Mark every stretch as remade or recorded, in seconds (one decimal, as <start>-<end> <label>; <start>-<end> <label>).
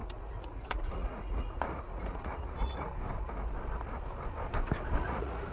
0.0-2.9 remade; 2.9-5.0 recorded; 5.0-5.5 remade